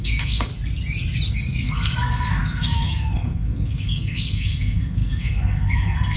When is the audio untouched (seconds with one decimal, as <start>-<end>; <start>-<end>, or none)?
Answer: 0.5-1.3